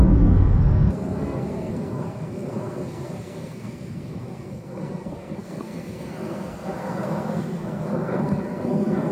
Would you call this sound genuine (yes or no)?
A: no